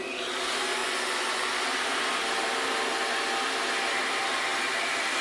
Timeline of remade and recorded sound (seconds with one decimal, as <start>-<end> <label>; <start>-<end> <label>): 0.0-0.8 recorded; 0.8-1.5 remade; 1.5-5.2 recorded